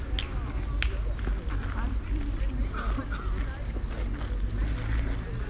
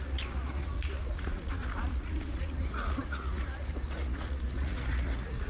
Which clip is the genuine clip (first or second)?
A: first